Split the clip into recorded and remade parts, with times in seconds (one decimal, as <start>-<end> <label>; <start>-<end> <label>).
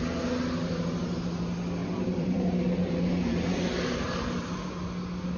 0.0-1.8 recorded; 1.8-4.7 remade; 4.7-5.4 recorded